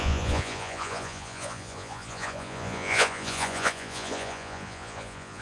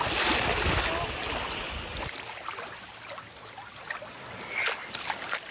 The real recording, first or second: second